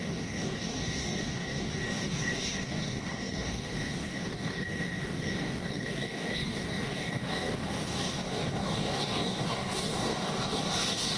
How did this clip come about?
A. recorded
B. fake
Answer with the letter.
B